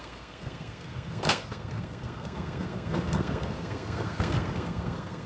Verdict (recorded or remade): remade